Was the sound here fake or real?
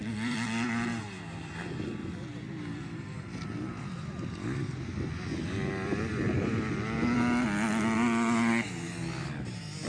real